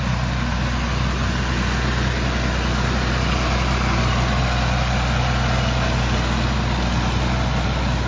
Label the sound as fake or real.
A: real